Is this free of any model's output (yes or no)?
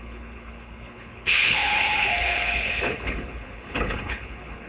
no